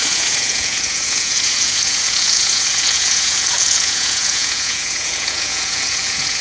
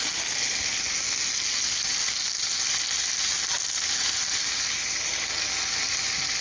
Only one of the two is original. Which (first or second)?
second